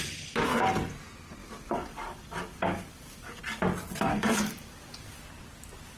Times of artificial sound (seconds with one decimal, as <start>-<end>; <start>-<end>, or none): 1.4-3.4; 4.1-5.2